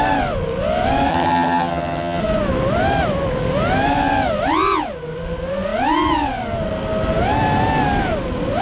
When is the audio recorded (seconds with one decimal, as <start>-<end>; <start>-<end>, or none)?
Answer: 0.0-1.1; 2.2-8.6